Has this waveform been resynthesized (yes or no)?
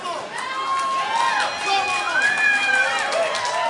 no